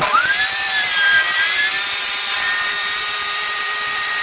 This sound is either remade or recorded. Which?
remade